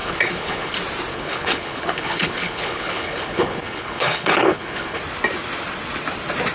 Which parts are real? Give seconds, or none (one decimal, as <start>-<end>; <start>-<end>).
0.7-1.1; 5.0-6.5